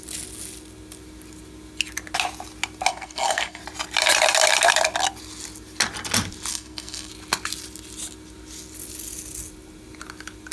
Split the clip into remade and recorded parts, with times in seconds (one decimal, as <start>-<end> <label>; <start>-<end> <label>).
0.0-2.9 recorded; 2.9-3.6 remade; 3.6-6.5 recorded; 6.5-7.1 remade; 7.1-10.5 recorded